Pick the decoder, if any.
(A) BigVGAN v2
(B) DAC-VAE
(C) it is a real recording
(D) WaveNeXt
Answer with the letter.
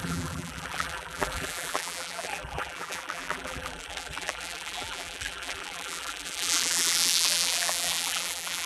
A